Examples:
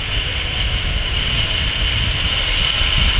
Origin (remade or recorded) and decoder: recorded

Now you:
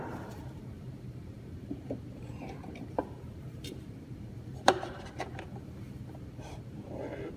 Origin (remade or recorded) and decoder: remade, vocoder, BigVGAN v2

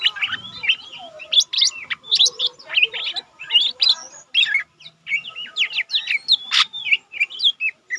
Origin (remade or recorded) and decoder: recorded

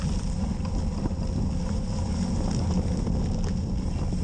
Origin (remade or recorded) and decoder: recorded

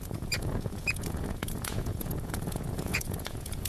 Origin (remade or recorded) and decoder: remade, vocoder, Vocos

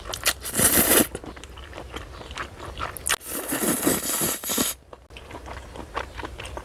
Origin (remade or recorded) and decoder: recorded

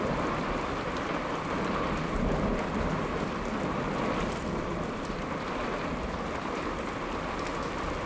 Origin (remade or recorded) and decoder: recorded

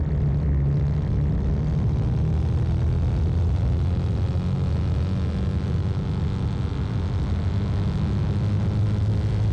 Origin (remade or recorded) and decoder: recorded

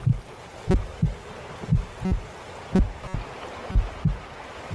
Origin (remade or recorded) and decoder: recorded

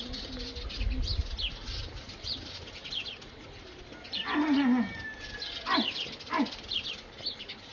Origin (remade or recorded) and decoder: recorded